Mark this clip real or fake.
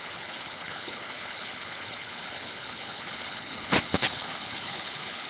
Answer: fake